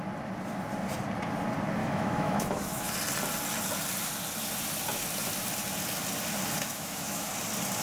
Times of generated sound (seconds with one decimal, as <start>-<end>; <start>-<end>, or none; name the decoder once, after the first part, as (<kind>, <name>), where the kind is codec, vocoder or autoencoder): 1.8-2.9 (autoencoder, DAC-VAE); 6.7-7.3